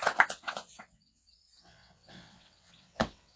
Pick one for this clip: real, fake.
fake